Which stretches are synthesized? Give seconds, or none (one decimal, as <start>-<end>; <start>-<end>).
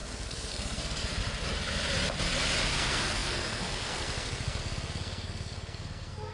0.0-1.2; 2.7-6.3